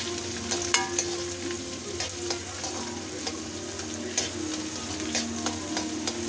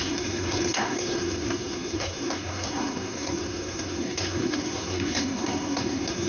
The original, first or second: first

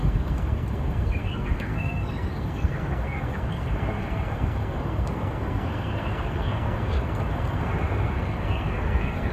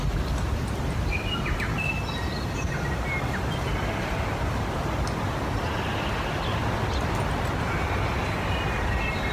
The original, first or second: second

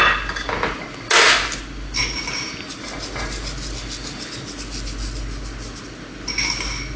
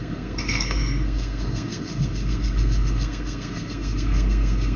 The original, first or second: first